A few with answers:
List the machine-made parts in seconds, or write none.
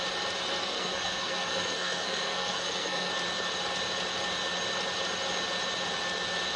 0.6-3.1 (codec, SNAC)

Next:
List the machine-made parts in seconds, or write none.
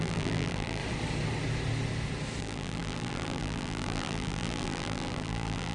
0.0-0.8 (vocoder, BigVGAN v2); 2.4-5.7